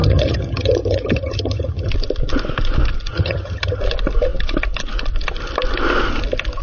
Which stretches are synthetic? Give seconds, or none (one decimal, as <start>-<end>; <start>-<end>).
0.0-1.9; 3.1-3.8